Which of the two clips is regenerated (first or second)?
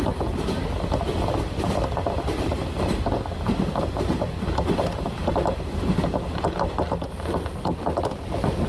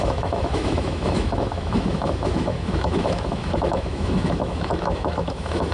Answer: second